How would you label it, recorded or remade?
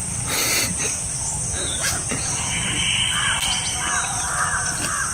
recorded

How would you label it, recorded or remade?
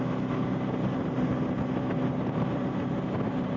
recorded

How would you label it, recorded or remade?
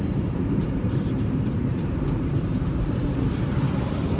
remade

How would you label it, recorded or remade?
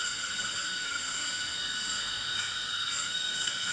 remade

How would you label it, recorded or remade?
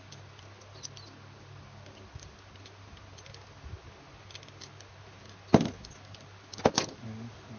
recorded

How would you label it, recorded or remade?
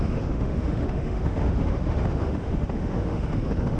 remade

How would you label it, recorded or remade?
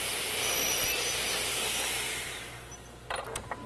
recorded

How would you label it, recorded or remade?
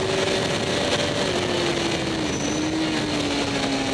recorded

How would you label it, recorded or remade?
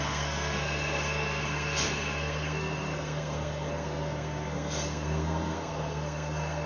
remade